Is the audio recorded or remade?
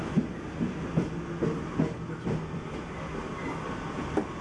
recorded